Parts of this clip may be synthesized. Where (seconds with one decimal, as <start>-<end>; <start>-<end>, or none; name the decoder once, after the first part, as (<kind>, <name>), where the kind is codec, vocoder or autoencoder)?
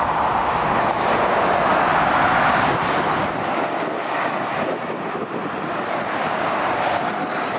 none